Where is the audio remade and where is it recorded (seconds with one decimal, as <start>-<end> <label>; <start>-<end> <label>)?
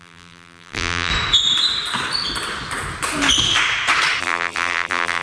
0.0-1.1 remade; 1.1-4.2 recorded; 4.2-5.2 remade